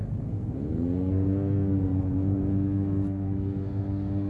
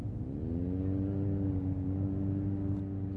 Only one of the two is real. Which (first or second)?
second